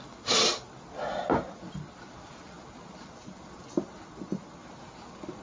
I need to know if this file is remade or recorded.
recorded